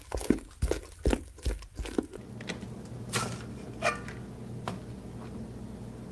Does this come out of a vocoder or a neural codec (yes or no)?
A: no